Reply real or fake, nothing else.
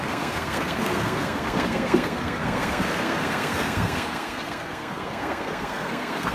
fake